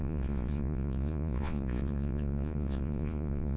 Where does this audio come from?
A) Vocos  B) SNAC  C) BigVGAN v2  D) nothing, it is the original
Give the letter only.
A